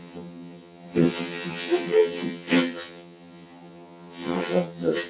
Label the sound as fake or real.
fake